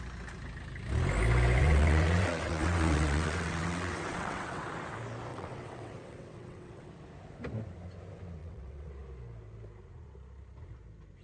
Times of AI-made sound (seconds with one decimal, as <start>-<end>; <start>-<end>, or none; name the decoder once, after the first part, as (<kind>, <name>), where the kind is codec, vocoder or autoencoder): 1.6-4.7 (vocoder, WaveNeXt); 5.3-6.9; 8.4-8.9